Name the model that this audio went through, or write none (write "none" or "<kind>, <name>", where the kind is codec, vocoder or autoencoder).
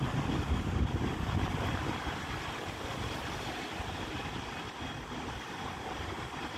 none